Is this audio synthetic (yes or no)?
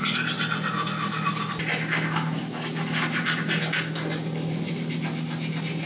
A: no